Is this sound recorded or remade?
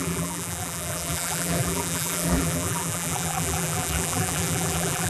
remade